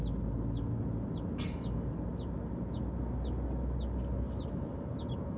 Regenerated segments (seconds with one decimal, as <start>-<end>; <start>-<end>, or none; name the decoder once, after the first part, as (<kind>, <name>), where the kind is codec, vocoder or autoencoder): none

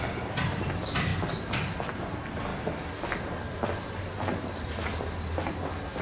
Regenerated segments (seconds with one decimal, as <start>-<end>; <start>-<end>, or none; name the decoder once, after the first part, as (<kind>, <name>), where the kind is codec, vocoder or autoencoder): none

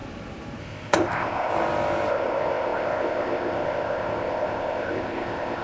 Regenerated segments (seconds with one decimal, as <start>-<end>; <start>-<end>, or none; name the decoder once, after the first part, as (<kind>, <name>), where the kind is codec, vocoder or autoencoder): 0.6-1.5 (codec, ZipCodec); 2.1-5.6

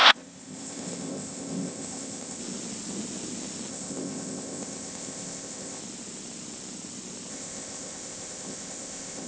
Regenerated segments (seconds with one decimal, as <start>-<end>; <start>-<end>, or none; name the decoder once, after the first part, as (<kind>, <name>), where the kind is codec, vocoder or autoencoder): 0.0-2.4 (codec, ZipCodec); 3.7-5.8; 7.3-9.3

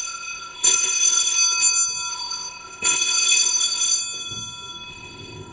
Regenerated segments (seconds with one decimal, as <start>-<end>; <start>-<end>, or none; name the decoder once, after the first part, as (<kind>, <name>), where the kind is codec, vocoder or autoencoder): 0.0-1.3 (codec, ZipCodec); 2.1-4.0; 4.9-5.5

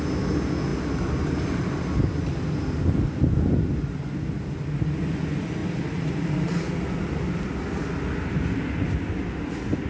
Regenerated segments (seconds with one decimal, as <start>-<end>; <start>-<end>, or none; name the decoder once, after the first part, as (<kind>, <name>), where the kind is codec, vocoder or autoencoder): none